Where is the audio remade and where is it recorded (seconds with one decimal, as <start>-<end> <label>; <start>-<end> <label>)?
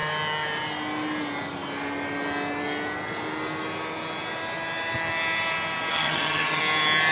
0.0-5.9 recorded; 5.9-6.6 remade; 6.6-7.1 recorded